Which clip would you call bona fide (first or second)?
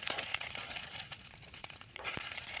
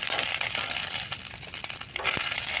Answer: second